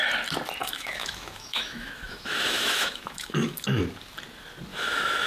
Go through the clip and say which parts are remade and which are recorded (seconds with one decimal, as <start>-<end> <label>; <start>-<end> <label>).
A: 0.0-0.6 recorded; 0.6-3.8 remade; 3.8-4.7 recorded; 4.7-5.3 remade